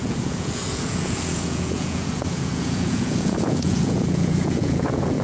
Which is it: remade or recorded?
remade